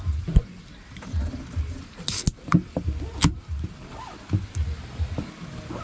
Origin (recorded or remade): recorded